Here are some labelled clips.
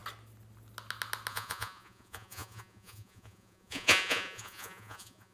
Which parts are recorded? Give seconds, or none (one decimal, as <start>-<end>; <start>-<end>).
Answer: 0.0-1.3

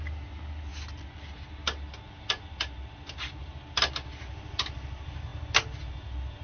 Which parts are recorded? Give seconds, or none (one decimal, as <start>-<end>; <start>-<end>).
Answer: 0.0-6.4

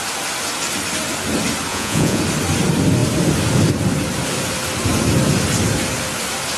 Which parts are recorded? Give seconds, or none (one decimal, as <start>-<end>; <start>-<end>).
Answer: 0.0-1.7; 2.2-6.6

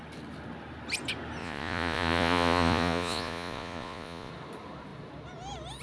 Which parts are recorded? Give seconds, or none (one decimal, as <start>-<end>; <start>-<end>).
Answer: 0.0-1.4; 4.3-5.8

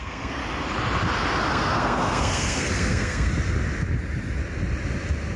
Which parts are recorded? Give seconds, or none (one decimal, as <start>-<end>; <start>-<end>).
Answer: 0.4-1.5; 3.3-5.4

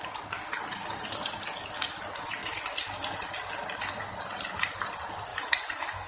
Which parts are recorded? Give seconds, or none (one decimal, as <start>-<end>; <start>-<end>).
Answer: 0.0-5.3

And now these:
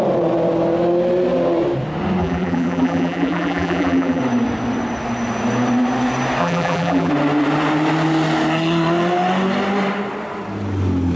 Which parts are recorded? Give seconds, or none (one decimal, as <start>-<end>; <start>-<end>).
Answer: 0.0-2.2; 4.2-6.4; 7.1-11.2